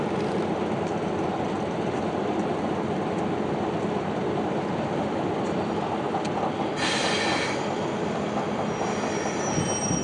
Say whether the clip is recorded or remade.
recorded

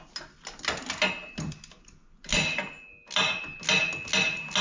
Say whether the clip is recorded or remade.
recorded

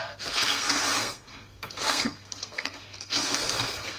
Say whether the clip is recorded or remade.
remade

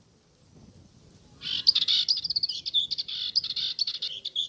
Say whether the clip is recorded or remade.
recorded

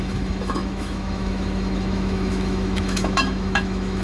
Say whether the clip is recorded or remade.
remade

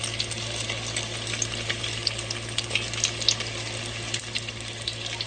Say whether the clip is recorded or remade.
recorded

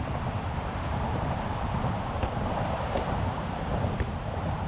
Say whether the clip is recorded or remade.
remade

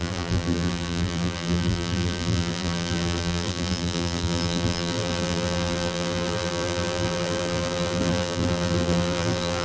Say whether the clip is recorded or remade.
remade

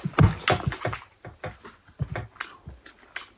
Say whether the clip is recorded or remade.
recorded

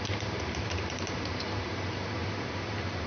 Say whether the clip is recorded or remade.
remade